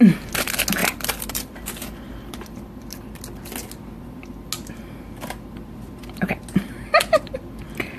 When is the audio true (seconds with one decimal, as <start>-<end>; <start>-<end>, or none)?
0.0-0.8; 2.8-8.0